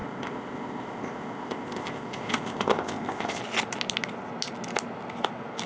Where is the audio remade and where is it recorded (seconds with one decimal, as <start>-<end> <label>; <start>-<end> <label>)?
0.0-3.4 remade; 3.4-5.7 recorded